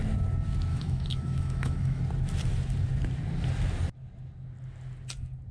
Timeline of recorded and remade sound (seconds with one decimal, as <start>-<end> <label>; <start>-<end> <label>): 0.0-0.7 recorded; 0.7-2.0 remade; 2.0-5.5 recorded